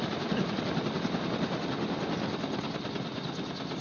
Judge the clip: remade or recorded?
recorded